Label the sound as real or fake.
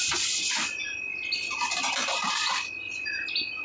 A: real